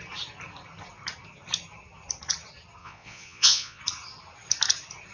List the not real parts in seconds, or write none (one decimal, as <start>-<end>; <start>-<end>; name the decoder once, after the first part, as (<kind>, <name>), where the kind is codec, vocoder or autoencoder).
2.8-3.8 (vocoder, Vocos)